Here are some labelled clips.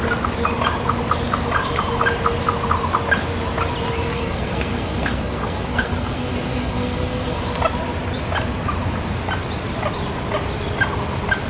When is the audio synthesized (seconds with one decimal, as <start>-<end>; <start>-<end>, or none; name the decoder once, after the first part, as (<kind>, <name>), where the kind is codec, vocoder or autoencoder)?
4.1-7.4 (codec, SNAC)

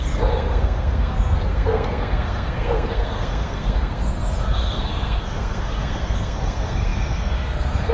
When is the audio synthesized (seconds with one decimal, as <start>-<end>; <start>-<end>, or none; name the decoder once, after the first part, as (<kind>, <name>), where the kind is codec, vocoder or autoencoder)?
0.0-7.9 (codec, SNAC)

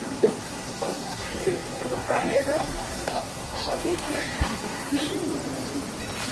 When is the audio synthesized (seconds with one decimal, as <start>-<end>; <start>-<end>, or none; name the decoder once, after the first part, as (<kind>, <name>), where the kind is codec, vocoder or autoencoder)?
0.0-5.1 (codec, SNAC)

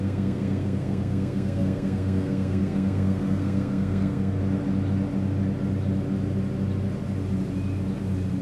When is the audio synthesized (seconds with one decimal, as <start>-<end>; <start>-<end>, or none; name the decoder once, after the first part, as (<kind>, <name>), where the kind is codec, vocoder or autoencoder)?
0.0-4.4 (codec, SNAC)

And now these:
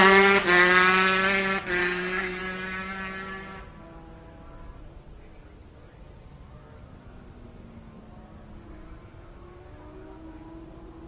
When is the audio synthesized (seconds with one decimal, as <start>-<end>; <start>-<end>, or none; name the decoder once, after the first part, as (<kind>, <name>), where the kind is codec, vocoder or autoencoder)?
1.8-2.4 (codec, SNAC)

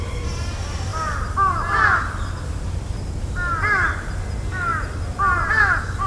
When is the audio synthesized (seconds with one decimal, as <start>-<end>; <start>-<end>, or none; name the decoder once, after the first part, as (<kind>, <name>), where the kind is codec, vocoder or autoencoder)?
none